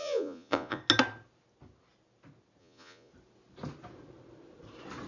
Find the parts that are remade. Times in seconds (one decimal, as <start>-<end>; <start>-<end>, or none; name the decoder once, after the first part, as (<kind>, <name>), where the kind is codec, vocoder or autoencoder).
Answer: 0.0-0.8 (vocoder, Vocos); 2.6-3.1